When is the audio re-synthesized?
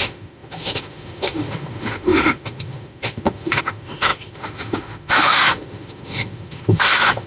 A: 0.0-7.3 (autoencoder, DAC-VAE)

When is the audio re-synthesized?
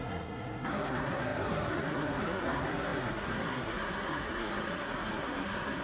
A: 0.0-5.8 (codec, SNAC)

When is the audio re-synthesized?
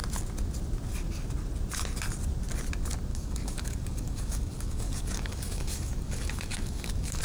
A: 3.1-7.2 (codec, DAC)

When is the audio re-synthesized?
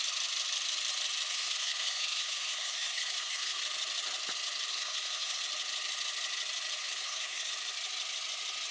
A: 1.3-3.6 (codec, SNAC); 4.7-5.4; 6.8-7.5